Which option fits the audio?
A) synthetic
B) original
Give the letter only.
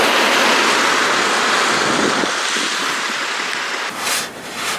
B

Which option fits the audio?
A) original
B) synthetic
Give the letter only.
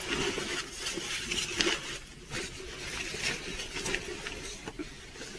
A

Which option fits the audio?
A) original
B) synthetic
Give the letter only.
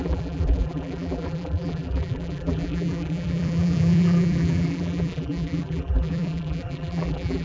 B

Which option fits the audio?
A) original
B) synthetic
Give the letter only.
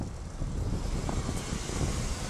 A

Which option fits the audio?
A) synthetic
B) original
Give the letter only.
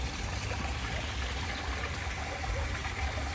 B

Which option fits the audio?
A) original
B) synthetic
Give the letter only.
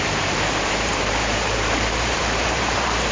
B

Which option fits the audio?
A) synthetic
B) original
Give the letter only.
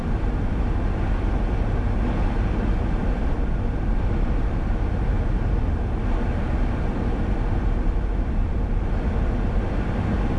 B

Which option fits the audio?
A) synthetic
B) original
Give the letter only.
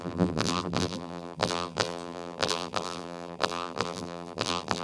A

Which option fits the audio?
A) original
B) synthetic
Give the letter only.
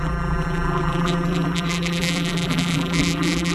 B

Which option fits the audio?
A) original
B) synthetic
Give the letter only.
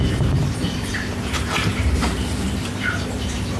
B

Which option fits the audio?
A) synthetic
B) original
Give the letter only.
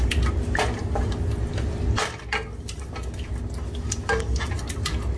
B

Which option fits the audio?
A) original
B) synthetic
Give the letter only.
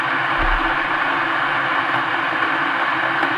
B